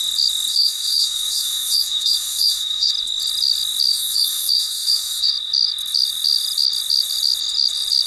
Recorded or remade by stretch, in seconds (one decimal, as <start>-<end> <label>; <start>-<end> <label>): 0.0-0.5 recorded; 0.5-2.9 remade; 2.9-3.9 recorded; 3.9-5.3 remade; 5.3-8.1 recorded